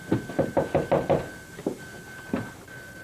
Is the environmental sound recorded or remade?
recorded